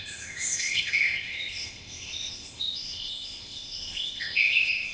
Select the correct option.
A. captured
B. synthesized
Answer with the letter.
B